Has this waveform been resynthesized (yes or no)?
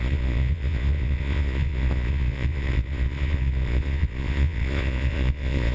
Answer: yes